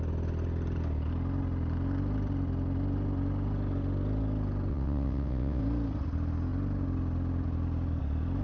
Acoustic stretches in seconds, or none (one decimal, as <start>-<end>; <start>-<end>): 0.0-4.7; 5.6-8.4